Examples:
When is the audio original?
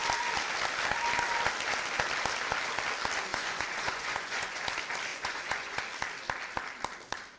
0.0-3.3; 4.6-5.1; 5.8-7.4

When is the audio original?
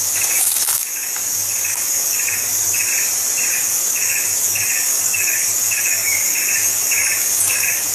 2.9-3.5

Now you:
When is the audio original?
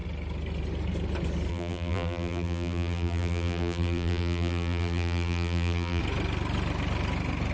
0.0-1.5; 6.0-7.5